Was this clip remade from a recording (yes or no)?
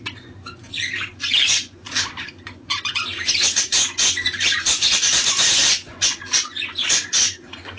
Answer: yes